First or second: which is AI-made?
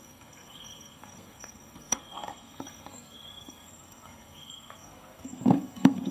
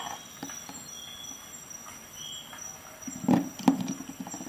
first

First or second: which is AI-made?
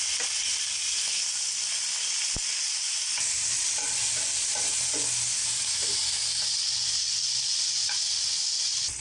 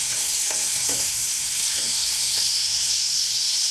second